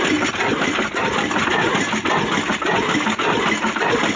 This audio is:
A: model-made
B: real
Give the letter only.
B